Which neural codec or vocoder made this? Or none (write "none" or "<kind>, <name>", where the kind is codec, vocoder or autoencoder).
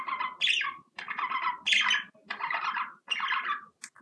none